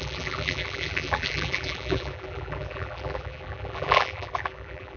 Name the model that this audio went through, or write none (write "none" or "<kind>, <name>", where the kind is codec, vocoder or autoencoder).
vocoder, BigVGAN v2